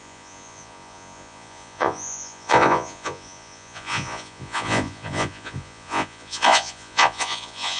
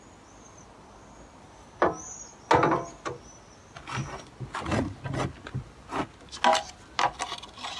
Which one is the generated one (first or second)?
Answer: first